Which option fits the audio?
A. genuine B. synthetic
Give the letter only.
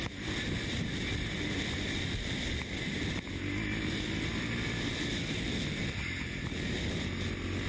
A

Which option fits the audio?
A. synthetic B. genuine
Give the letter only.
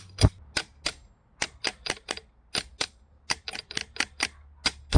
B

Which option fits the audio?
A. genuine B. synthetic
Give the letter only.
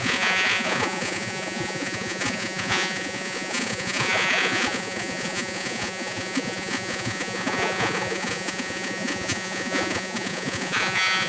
B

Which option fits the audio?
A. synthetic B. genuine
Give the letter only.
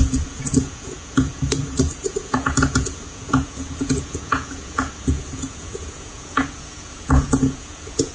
A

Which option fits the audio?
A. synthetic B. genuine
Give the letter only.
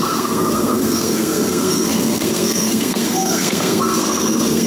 A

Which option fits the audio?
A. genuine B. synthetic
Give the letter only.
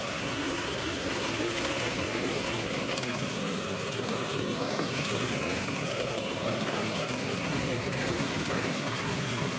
B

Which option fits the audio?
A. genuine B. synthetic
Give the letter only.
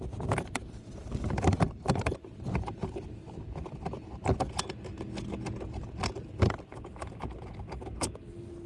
A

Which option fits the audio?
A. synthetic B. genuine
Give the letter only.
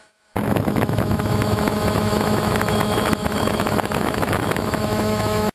A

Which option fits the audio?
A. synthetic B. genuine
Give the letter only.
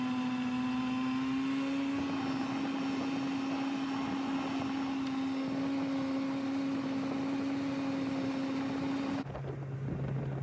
B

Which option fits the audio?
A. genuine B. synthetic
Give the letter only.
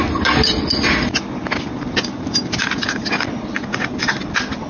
A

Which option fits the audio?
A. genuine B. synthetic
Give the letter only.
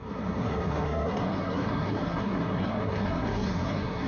B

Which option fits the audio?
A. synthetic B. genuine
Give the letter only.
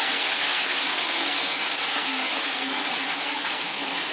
A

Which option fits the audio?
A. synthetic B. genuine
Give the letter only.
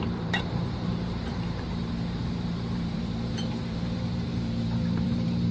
A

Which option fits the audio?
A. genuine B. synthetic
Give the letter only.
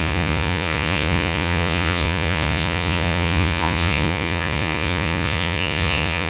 B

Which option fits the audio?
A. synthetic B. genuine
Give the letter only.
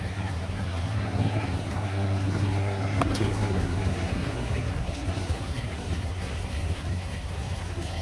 A